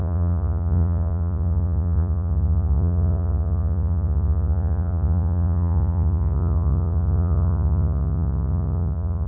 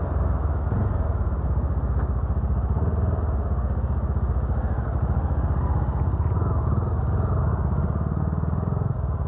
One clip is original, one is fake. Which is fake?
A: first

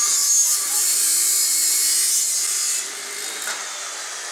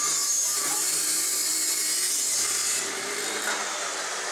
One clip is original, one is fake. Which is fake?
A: second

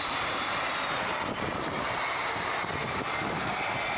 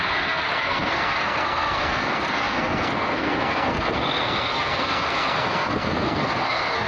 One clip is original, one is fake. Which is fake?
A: second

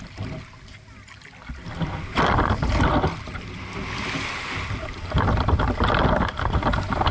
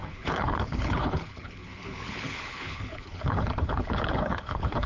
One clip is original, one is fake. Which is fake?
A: second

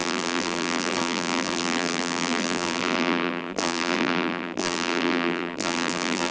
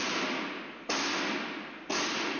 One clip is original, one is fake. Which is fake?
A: first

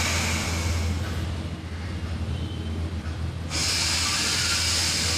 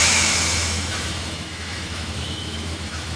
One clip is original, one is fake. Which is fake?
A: second